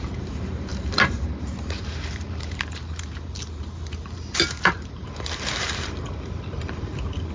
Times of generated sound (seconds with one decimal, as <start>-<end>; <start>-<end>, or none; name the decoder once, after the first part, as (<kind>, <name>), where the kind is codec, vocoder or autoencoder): 0.0-7.3 (vocoder, BigVGAN v2)